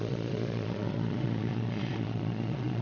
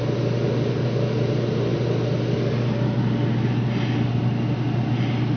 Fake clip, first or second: first